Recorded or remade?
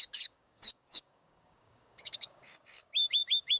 remade